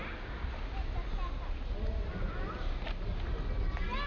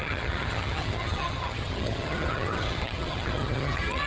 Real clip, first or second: first